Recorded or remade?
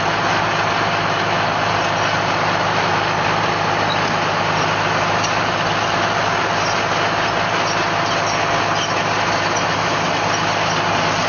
recorded